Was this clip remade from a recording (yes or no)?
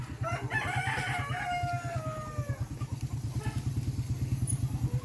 no